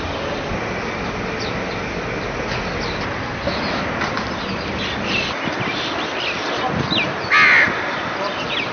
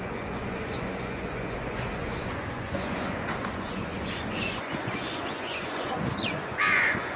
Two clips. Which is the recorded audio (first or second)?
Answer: first